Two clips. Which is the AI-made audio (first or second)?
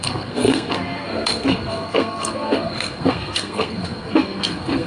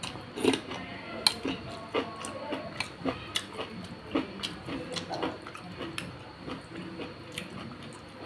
first